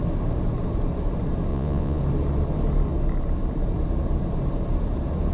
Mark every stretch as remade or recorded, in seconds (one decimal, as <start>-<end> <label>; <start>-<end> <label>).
0.0-1.5 recorded; 1.5-2.0 remade; 2.0-5.3 recorded